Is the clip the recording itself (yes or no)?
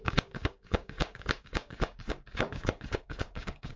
no